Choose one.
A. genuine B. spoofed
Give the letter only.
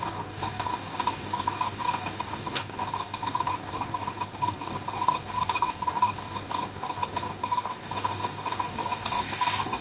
B